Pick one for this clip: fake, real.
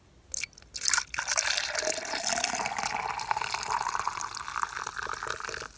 real